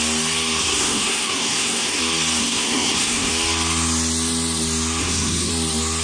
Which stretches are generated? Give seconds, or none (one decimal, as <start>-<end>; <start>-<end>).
0.6-2.0; 2.4-3.3; 5.0-5.5